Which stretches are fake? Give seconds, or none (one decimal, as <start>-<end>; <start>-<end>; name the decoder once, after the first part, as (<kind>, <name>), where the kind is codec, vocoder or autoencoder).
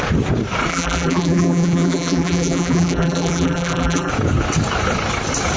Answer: 0.7-4.1 (vocoder, BigVGAN v2)